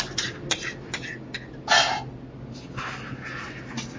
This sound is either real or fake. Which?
real